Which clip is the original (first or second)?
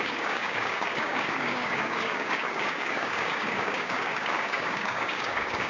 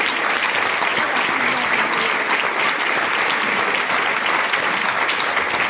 second